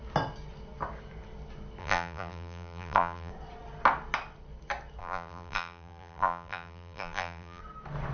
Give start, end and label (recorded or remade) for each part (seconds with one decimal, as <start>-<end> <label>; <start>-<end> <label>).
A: 0.0-1.8 recorded; 1.8-3.3 remade; 3.3-5.0 recorded; 5.0-7.6 remade; 7.6-8.1 recorded